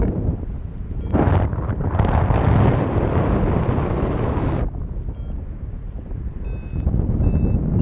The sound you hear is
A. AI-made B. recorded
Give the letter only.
B